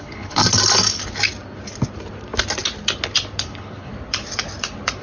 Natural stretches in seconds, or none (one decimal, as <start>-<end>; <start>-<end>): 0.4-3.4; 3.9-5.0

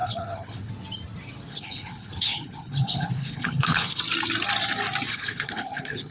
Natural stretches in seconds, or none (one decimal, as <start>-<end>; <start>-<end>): 0.7-1.5; 4.0-5.1

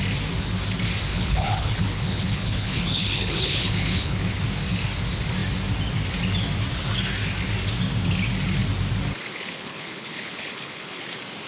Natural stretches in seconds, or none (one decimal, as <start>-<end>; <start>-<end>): 0.0-1.1; 4.2-9.3; 11.0-11.5

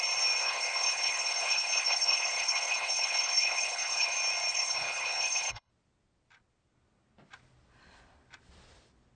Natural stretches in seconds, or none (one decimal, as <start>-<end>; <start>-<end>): 0.0-0.4; 4.1-4.5; 5.7-9.2

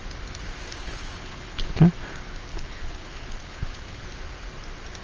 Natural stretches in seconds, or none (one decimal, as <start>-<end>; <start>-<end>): 0.0-0.6; 1.7-2.5; 4.0-5.0

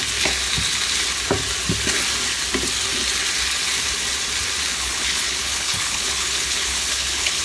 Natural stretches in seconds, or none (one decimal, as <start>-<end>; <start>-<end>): 0.0-4.7